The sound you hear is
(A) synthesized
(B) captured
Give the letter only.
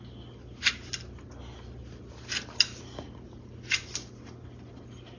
B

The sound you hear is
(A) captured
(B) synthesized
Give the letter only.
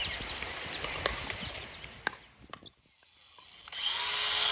A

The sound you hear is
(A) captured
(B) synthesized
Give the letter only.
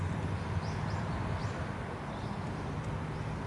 A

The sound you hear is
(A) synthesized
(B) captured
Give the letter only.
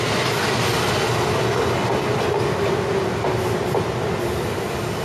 B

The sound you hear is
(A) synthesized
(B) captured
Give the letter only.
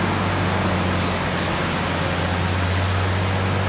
B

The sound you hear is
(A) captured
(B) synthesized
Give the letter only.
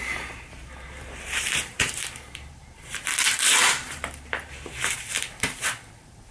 B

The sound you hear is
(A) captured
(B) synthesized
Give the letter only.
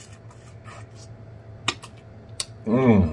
A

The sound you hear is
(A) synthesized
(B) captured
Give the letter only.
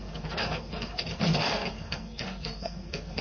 A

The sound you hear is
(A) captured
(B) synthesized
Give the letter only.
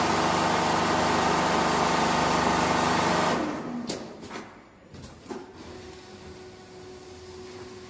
A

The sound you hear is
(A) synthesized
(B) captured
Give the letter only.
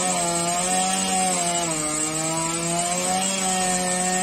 B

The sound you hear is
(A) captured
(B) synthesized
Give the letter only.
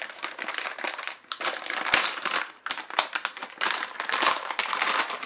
B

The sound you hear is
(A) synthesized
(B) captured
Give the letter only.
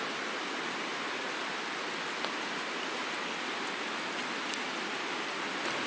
B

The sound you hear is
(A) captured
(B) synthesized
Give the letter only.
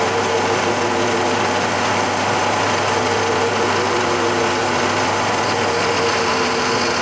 A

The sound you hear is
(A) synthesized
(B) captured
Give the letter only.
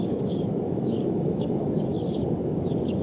A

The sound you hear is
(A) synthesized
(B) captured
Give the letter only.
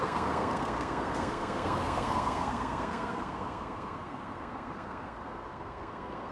A